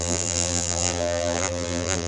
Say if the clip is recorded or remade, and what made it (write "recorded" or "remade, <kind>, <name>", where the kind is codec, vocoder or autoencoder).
remade, vocoder, BigVGAN v2